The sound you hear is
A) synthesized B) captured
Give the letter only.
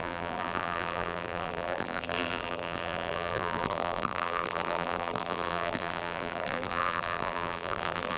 A